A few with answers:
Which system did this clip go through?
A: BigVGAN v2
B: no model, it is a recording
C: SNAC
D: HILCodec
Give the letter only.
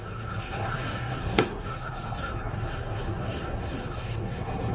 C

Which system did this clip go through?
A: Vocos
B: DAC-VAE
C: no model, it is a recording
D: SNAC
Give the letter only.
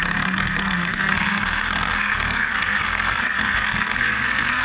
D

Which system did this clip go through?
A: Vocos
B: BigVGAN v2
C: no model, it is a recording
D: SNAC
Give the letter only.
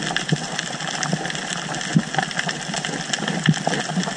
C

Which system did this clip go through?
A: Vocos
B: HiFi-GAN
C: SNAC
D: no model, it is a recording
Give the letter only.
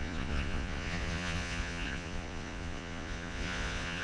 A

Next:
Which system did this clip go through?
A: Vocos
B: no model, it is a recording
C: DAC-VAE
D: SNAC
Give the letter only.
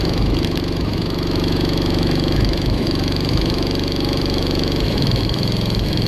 C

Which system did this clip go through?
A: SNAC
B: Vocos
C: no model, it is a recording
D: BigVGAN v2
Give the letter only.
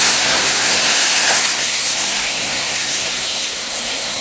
A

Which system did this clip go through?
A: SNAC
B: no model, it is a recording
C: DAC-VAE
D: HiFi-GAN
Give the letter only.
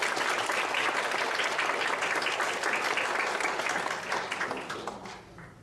B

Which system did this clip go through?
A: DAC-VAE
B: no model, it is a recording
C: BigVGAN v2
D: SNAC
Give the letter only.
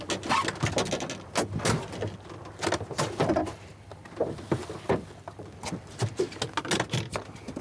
B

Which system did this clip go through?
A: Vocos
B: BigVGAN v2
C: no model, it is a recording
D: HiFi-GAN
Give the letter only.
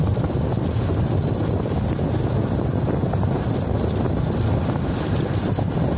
C